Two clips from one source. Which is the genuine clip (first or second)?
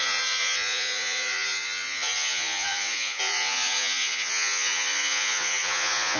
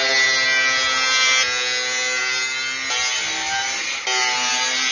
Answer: second